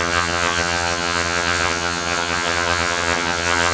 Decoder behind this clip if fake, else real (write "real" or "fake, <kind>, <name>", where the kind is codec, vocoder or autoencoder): fake, vocoder, HiFi-GAN